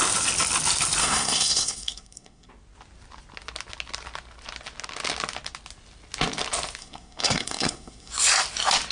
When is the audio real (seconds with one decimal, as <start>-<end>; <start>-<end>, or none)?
0.0-1.0; 2.5-6.8; 8.1-8.9